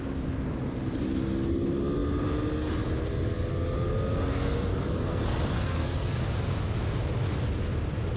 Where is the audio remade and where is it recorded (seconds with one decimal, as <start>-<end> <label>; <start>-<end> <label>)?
0.0-4.3 recorded; 4.3-6.2 remade; 6.2-8.2 recorded

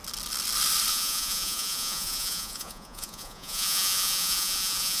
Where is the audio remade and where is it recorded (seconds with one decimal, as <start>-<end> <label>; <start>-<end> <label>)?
0.0-0.9 recorded; 0.9-5.0 remade

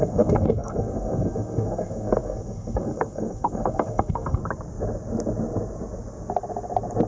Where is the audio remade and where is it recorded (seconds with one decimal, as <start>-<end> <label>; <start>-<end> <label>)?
0.0-4.4 remade; 4.4-7.1 recorded

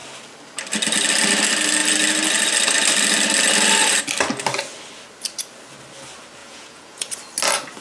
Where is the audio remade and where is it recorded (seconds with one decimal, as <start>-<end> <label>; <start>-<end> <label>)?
0.0-6.4 recorded; 6.4-7.1 remade; 7.1-7.8 recorded